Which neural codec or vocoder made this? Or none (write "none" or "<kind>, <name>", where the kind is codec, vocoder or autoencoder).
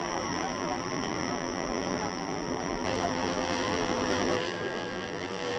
vocoder, BigVGAN v2